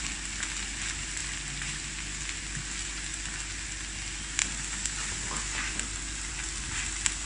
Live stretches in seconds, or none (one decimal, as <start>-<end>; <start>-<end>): 0.0-7.3